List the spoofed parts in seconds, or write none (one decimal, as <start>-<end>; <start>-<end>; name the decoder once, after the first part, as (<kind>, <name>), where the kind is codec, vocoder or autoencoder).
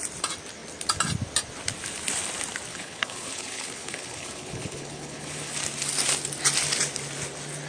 2.7-5.5 (codec, HILCodec)